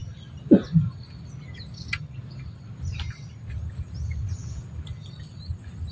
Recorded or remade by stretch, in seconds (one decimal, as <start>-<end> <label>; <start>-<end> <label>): 0.0-5.9 recorded